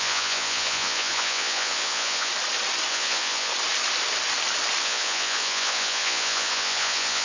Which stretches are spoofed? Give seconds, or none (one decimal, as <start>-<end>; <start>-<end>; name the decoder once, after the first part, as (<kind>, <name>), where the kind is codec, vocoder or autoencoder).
0.0-2.3 (vocoder, Vocos); 2.9-3.5; 4.8-7.2